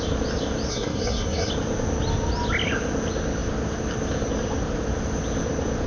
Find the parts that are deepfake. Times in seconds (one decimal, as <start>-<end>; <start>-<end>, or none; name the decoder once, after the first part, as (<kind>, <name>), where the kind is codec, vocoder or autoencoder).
0.7-1.5 (codec, SNAC)